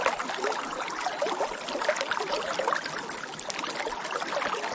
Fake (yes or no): no